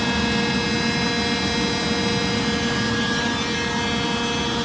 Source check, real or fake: real